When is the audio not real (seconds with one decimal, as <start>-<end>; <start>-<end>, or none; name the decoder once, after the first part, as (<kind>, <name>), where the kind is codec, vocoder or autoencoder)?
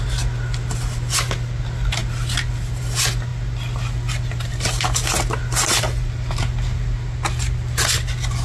none